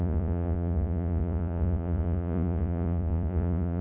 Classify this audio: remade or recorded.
remade